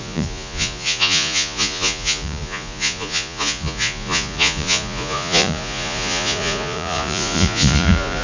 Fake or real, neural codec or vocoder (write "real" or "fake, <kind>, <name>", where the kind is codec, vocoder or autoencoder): fake, vocoder, Vocos